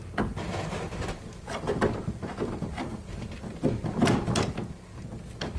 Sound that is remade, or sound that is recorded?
recorded